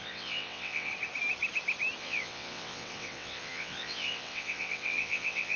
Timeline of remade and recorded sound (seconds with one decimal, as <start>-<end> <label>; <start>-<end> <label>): 0.0-0.9 remade; 0.9-2.0 recorded; 2.0-5.6 remade

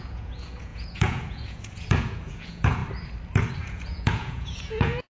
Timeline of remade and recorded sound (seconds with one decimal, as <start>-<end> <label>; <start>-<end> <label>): 0.0-2.8 remade; 2.8-3.6 recorded; 3.6-5.1 remade

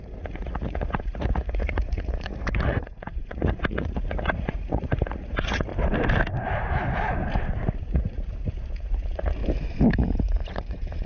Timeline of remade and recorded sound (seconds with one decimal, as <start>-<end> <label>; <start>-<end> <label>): 0.0-5.7 remade; 5.7-7.8 recorded; 7.8-9.4 remade; 9.4-9.9 recorded; 9.9-11.1 remade

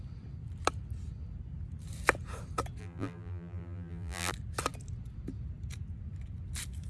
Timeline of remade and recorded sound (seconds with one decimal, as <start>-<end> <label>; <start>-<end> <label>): 0.0-2.8 recorded; 2.8-4.3 remade; 4.3-6.9 recorded

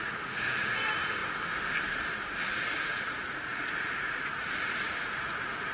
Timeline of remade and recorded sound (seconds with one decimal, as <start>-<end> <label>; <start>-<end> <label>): 0.0-1.2 remade; 1.2-2.4 recorded; 2.4-5.7 remade

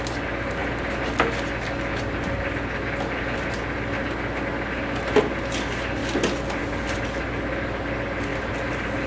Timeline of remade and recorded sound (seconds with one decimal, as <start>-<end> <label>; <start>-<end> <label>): 0.0-9.1 recorded

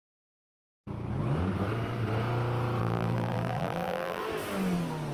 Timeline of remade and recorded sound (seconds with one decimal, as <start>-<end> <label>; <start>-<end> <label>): 0.0-2.8 recorded; 2.8-4.2 remade; 4.2-5.1 recorded

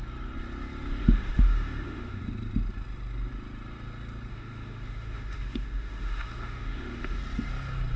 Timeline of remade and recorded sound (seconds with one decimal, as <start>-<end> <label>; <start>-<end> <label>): 0.0-1.0 recorded; 1.0-2.2 remade; 2.2-4.3 recorded; 4.3-7.2 remade; 7.2-8.0 recorded